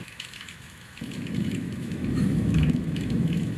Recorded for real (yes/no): no